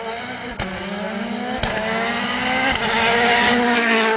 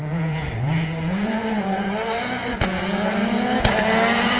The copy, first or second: second